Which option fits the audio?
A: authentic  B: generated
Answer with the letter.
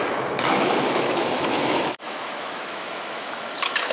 B